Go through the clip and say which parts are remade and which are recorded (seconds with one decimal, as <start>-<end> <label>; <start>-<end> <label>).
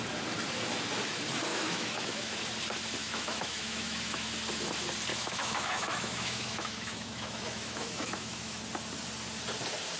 0.0-1.5 recorded; 1.5-2.3 remade; 2.3-3.0 recorded; 3.0-4.3 remade; 4.3-5.1 recorded; 5.1-8.6 remade; 8.6-10.0 recorded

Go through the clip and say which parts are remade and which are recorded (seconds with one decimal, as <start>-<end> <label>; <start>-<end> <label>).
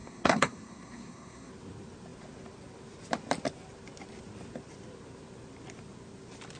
0.0-1.5 remade; 1.5-6.6 recorded